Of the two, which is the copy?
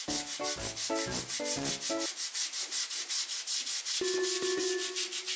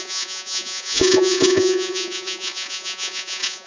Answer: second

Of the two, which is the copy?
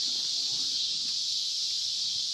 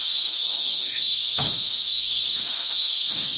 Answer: second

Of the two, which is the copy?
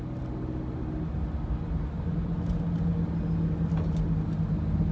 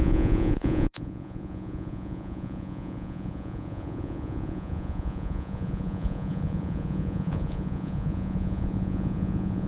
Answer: second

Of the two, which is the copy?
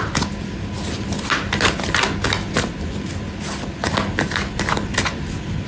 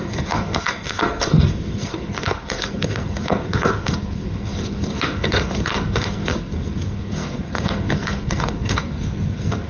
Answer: second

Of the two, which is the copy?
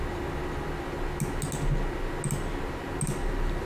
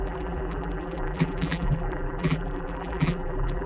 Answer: second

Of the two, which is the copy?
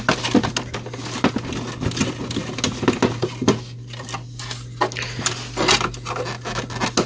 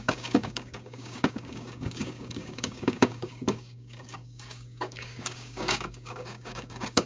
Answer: second